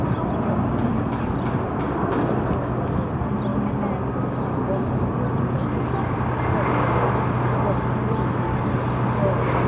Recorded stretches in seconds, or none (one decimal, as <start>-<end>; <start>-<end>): 0.0-3.5; 4.1-9.7